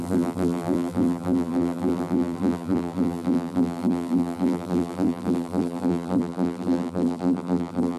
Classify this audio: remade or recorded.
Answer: remade